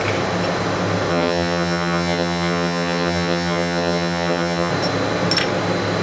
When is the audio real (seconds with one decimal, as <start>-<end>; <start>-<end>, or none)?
0.0-1.1; 4.7-6.0

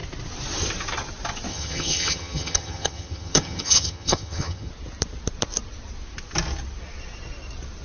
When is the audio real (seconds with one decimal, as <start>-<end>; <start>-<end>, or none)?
0.0-1.5; 4.7-7.8

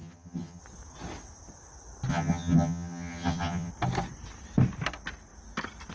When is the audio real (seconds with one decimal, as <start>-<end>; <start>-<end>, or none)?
0.6-2.1; 3.7-5.9

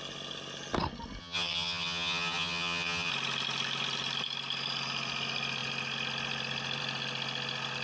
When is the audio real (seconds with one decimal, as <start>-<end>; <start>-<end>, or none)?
0.0-1.2; 3.1-7.8

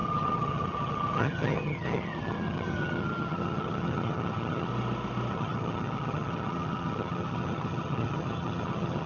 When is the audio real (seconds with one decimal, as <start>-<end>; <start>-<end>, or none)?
4.7-5.3

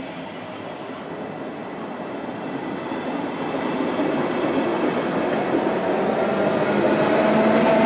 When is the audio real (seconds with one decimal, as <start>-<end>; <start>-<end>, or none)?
0.0-7.9

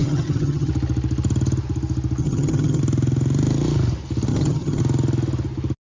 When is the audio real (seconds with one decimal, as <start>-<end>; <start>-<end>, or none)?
0.7-2.2; 2.8-4.3; 4.8-6.0